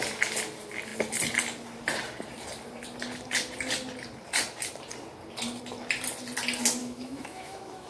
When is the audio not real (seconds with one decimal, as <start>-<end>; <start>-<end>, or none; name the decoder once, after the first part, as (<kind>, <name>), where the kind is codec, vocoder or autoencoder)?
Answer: 6.8-7.9 (autoencoder, DAC-VAE)